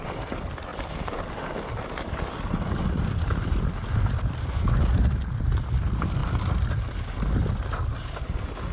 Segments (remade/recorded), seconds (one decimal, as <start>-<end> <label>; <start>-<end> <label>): 0.0-8.7 recorded